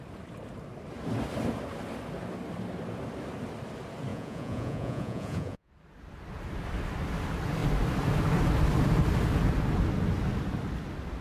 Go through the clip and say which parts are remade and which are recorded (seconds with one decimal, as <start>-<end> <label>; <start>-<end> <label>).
0.0-4.1 recorded; 4.1-5.7 remade; 5.7-11.2 recorded